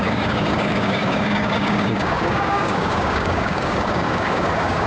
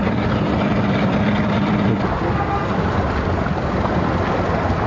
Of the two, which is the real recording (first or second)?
second